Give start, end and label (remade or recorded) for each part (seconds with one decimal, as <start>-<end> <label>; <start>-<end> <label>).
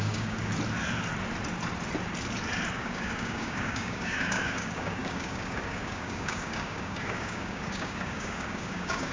0.0-0.5 remade; 0.5-2.7 recorded; 2.7-9.1 remade